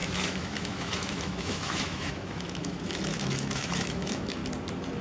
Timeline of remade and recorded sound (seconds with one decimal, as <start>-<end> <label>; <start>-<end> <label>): 0.0-4.4 remade; 4.4-5.0 recorded